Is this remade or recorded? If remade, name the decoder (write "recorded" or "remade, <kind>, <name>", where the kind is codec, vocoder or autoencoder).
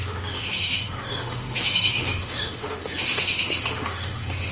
remade, autoencoder, DAC-VAE